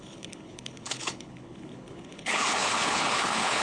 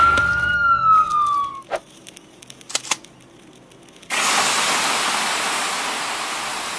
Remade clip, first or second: first